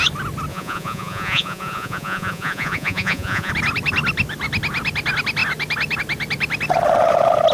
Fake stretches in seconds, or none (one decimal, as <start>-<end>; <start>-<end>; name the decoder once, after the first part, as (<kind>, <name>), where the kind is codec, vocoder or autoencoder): 0.5-3.5 (vocoder, Vocos)